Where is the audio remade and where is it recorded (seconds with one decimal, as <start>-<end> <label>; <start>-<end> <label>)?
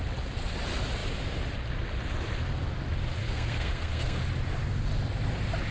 0.0-3.2 recorded; 3.2-4.2 remade; 4.2-5.7 recorded